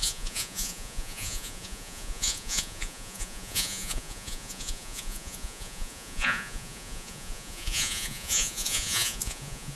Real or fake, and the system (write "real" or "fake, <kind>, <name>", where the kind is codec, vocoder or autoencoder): fake, vocoder, Vocos